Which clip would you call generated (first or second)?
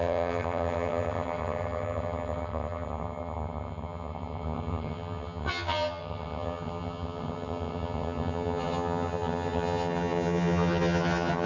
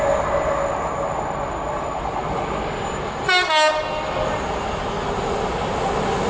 first